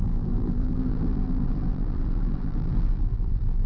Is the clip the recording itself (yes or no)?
no